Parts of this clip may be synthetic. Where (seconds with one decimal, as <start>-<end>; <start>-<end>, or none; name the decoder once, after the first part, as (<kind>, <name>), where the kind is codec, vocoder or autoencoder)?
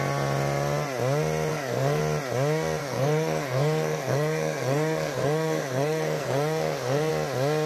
1.5-2.0 (codec, SNAC); 2.8-7.1